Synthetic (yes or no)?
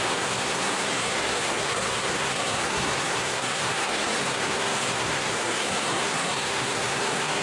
yes